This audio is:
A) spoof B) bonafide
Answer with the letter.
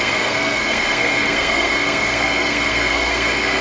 A